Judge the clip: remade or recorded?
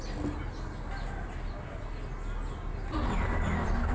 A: recorded